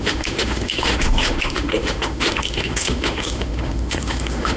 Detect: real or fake fake